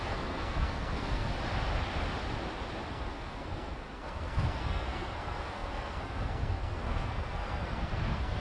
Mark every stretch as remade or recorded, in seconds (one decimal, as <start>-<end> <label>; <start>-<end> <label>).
0.0-1.3 remade; 1.3-2.9 recorded; 2.9-8.4 remade

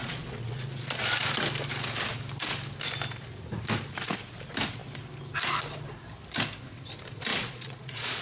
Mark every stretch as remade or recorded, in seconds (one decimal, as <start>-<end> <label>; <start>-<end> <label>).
0.0-1.0 remade; 1.0-7.3 recorded; 7.3-8.2 remade

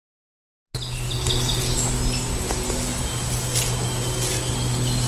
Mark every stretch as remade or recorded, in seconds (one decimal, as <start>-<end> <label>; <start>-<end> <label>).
0.0-5.1 recorded

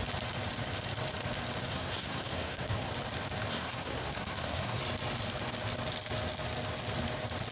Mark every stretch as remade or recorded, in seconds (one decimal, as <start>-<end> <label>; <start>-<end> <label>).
0.0-1.7 recorded; 1.7-2.9 remade; 2.9-3.5 recorded; 3.5-4.8 remade; 4.8-7.5 recorded

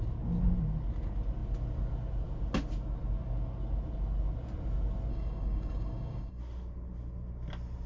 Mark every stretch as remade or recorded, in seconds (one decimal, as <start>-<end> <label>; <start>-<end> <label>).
0.0-5.1 recorded; 5.1-6.4 remade; 6.4-7.9 recorded